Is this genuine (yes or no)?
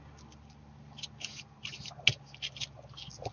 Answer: yes